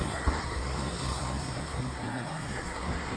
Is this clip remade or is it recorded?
remade